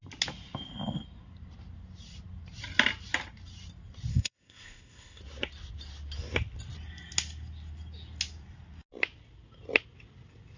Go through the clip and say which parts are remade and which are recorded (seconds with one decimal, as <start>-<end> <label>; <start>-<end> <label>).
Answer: 0.0-4.1 recorded; 4.1-5.2 remade; 5.2-10.6 recorded